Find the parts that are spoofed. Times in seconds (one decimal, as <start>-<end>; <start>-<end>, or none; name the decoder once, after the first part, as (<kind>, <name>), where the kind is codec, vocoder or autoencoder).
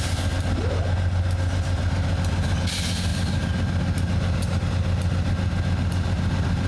none